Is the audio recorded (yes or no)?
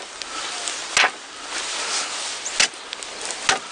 yes